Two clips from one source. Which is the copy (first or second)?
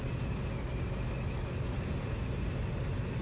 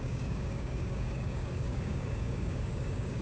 second